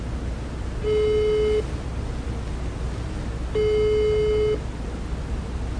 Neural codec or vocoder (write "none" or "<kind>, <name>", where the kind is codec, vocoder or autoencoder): none